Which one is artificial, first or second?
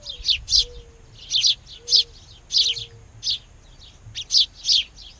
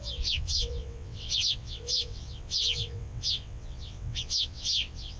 second